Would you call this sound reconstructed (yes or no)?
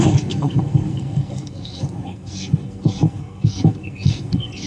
yes